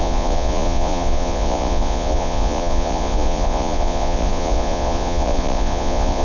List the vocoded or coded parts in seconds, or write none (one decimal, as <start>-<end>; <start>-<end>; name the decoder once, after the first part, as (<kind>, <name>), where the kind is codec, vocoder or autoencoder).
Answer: 0.0-6.2 (vocoder, Vocos)